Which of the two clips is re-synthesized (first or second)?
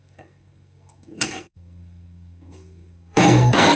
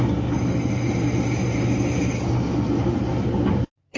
first